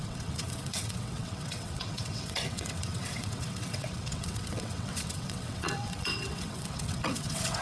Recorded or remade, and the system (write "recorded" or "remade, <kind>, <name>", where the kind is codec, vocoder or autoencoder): remade, vocoder, WaveNeXt